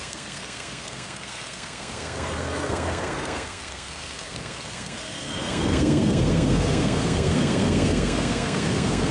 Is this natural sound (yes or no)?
no